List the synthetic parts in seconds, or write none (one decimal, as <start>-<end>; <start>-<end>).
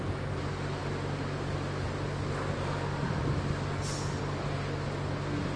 none